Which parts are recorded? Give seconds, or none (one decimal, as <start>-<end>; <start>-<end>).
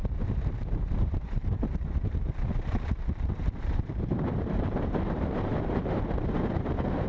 none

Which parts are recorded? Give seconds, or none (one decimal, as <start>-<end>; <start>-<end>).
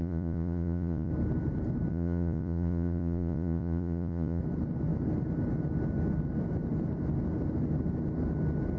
1.1-1.9; 4.4-8.8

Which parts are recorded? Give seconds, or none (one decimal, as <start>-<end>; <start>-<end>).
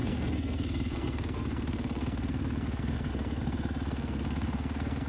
none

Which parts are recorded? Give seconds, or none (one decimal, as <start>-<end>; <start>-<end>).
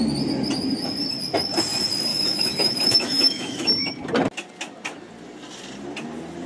0.0-2.1; 3.9-6.5